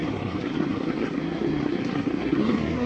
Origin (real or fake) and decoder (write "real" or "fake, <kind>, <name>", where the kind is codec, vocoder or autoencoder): fake, codec, SNAC